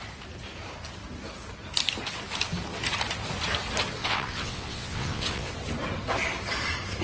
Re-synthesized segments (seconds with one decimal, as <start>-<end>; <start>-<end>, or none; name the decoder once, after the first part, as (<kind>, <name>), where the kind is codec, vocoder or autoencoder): 4.0-5.5 (vocoder, WaveNeXt)